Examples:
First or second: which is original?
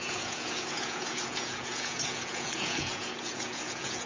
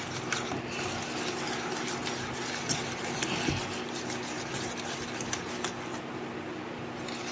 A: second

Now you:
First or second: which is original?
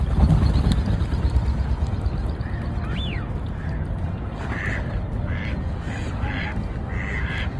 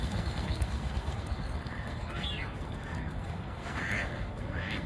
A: first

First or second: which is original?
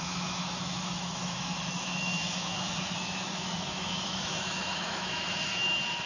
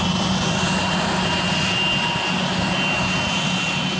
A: second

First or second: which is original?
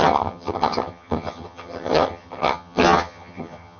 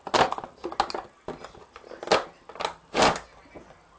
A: second